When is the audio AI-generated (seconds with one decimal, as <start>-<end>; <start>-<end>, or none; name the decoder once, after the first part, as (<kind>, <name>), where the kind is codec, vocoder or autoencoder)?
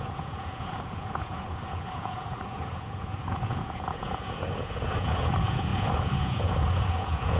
0.0-7.4 (vocoder, Vocos)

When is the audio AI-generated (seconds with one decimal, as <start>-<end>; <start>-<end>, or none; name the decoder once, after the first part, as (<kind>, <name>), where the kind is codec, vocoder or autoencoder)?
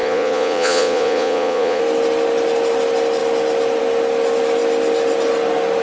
0.0-1.8 (vocoder, Vocos)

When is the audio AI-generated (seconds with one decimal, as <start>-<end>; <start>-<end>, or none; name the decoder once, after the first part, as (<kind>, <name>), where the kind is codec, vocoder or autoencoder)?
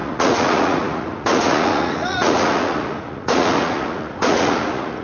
0.0-5.0 (vocoder, Vocos)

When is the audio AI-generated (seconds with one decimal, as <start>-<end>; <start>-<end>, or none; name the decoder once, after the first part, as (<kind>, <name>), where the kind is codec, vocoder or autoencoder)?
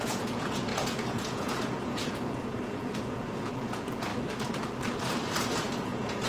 0.0-4.1 (vocoder, Vocos); 5.8-6.3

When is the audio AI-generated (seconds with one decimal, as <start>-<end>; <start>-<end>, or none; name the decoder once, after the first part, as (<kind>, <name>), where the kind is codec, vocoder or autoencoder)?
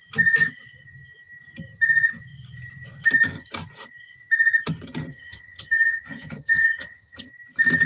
5.1-7.3 (vocoder, HiFi-GAN)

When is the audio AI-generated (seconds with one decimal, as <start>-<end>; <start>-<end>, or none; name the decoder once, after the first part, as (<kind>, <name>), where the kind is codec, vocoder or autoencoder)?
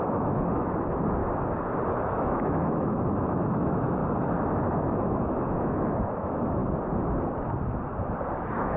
0.0-1.2 (autoencoder, DAC-VAE); 1.9-4.0; 5.1-6.6; 8.3-8.8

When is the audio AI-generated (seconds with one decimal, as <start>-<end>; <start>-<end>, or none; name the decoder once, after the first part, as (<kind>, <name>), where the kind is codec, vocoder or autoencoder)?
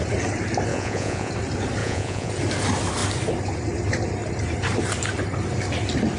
0.7-1.3 (vocoder, Vocos); 1.8-2.3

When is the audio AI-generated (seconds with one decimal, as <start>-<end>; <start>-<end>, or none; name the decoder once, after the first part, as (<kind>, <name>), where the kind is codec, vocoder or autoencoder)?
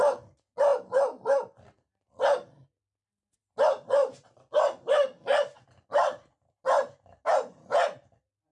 none